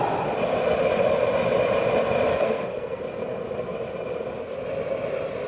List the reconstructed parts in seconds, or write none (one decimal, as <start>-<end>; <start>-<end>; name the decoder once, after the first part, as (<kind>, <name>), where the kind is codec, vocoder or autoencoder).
2.3-3.0 (codec, SNAC)